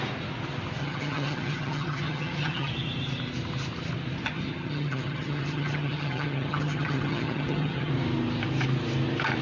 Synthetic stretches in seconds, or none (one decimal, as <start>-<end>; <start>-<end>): 0.8-2.7; 4.3-7.9